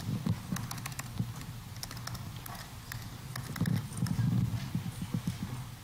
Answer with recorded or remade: recorded